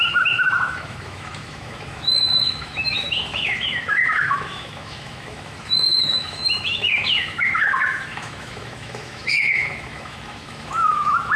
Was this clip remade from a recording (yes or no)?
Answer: yes